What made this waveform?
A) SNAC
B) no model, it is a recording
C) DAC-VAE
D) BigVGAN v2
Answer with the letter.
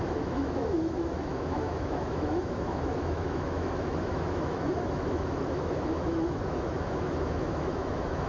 C